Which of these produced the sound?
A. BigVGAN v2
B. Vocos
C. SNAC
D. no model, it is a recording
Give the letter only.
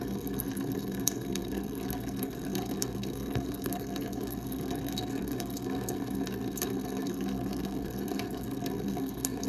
C